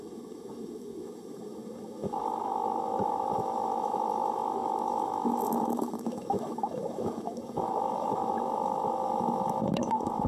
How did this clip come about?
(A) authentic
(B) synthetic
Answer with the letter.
B